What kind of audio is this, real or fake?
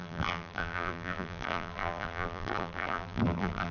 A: fake